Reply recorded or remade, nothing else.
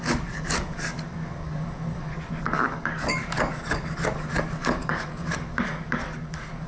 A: remade